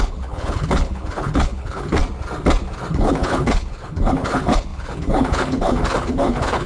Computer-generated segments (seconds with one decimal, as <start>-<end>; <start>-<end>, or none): 0.0-2.0; 2.9-6.7